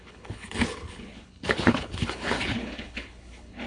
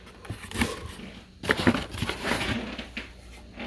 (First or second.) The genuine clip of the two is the second